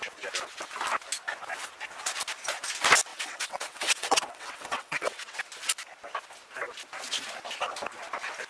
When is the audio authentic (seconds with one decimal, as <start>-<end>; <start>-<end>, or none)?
0.0-3.1; 5.4-8.5